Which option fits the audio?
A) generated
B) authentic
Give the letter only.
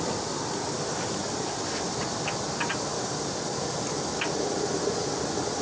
B